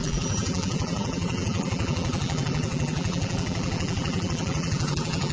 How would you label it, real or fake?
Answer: fake